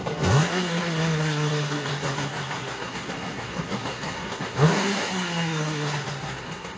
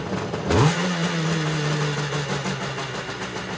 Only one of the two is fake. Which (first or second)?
first